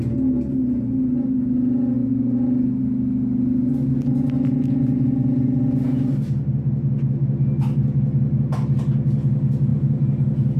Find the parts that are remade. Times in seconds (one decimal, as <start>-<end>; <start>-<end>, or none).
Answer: 9.7-10.6